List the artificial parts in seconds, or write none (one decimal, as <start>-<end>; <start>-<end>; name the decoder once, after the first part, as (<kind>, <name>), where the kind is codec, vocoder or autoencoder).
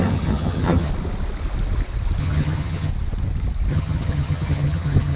0.0-0.9 (vocoder, HiFi-GAN); 2.2-2.9; 3.7-5.2